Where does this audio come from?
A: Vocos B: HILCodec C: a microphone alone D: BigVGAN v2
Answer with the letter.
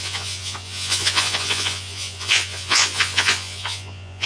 A